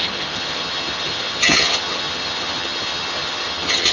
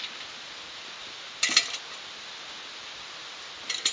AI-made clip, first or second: first